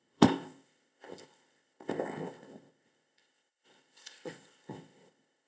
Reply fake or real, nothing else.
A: fake